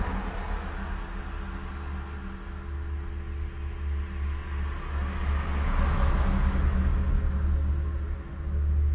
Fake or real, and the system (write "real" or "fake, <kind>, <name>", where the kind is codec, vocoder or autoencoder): real